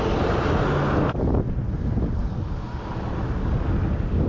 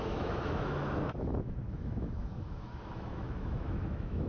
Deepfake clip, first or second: second